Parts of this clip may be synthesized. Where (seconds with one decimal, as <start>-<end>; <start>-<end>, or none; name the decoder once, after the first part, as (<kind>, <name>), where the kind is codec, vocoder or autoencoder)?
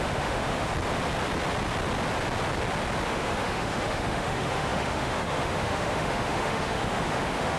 0.0-0.7 (autoencoder, DAC-VAE); 3.1-7.6